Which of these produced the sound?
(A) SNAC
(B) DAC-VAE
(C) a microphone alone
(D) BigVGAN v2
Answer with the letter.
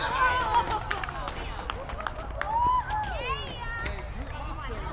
C